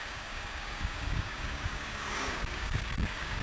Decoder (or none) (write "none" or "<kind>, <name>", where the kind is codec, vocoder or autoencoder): codec, DAC